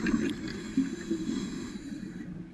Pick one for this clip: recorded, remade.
recorded